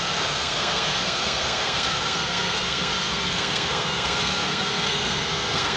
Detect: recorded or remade remade